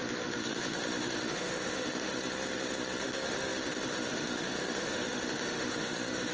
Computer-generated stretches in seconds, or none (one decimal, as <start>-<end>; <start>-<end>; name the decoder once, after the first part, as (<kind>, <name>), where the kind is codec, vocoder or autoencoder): 0.0-2.1 (autoencoder, DAC-VAE); 3.0-6.3